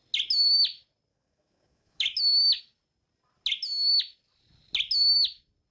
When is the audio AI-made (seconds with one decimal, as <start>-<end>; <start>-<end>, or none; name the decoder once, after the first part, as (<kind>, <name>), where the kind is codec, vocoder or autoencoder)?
1.1-2.6 (autoencoder, DAC-VAE)